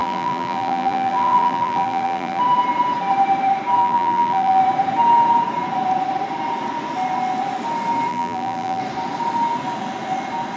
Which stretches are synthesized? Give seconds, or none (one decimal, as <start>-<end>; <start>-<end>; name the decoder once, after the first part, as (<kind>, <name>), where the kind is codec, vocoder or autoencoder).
0.0-2.4 (vocoder, BigVGAN v2); 3.8-4.6; 8.1-8.8